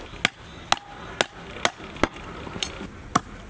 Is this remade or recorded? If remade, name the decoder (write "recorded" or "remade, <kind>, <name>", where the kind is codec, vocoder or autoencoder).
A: recorded